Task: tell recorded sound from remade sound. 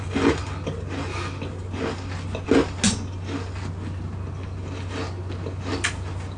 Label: recorded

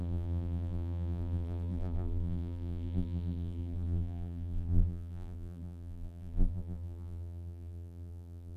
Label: remade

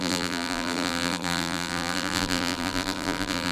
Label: remade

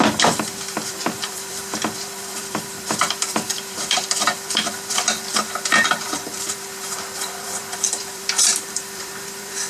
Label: remade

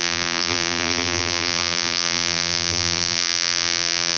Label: remade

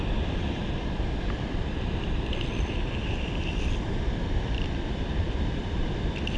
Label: remade